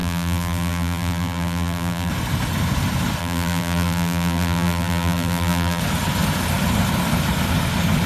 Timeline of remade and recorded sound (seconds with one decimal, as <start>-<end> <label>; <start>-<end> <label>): 0.0-2.1 remade; 2.1-3.2 recorded; 3.2-5.8 remade; 5.8-8.1 recorded